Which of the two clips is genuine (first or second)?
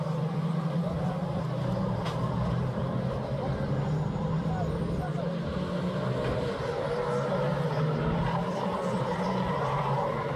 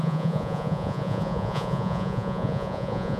first